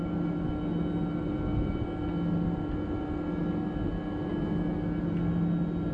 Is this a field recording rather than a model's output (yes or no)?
yes